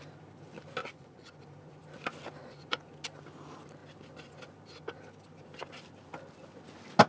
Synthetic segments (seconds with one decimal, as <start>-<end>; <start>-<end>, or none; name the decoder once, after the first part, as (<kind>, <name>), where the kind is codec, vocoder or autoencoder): 0.8-1.4 (vocoder, Vocos); 2.4-2.9